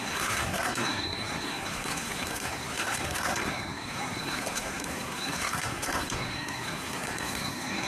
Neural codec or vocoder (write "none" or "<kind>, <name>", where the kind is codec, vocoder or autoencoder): codec, SNAC